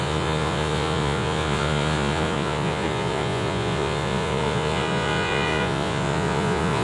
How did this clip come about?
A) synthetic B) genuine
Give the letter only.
A